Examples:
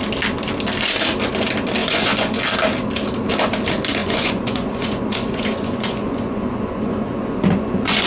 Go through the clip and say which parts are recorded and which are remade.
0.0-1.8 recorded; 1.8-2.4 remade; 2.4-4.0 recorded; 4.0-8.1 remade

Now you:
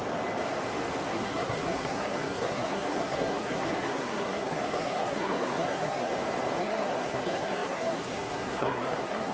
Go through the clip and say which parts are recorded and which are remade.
0.0-1.1 recorded; 1.1-6.1 remade; 6.1-6.6 recorded; 6.6-9.3 remade

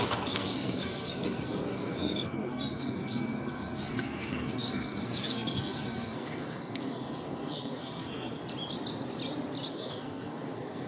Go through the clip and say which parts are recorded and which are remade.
0.0-8.4 remade; 8.4-9.7 recorded; 9.7-10.9 remade

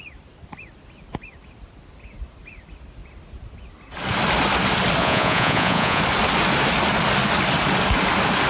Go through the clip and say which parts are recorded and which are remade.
0.0-5.0 recorded; 5.0-6.0 remade; 6.0-8.5 recorded

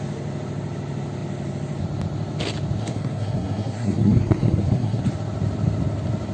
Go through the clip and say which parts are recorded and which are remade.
0.0-2.8 recorded; 2.8-5.0 remade; 5.0-6.3 recorded

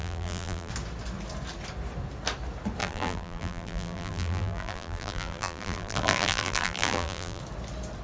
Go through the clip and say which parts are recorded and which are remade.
0.0-0.7 remade; 0.7-2.8 recorded; 2.8-7.4 remade; 7.4-8.0 recorded

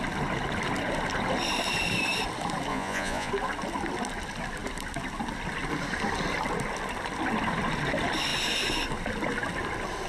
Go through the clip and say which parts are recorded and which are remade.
0.0-2.7 recorded; 2.7-3.3 remade; 3.3-10.1 recorded

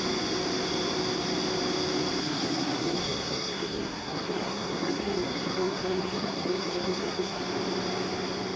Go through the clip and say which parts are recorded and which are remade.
0.0-2.2 recorded; 2.2-7.4 remade; 7.4-8.6 recorded